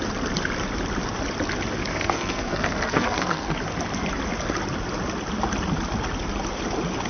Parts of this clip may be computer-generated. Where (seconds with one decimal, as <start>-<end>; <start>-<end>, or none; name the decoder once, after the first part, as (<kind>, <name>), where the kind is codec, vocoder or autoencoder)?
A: 1.9-3.6 (codec, SNAC)